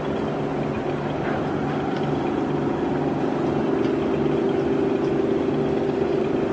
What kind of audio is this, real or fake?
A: real